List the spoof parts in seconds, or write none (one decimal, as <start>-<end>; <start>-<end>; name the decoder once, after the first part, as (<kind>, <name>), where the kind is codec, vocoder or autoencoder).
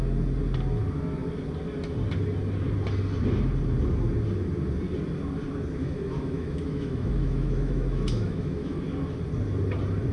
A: 5.8-8.8 (autoencoder, DAC-VAE)